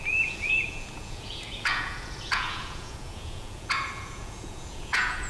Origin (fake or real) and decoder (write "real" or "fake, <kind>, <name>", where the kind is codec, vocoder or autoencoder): fake, vocoder, Vocos